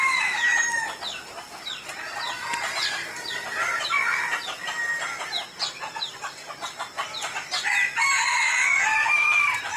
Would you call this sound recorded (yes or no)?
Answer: yes